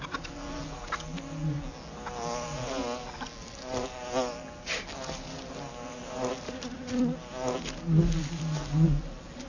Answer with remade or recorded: recorded